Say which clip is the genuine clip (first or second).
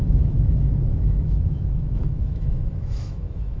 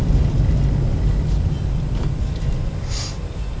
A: second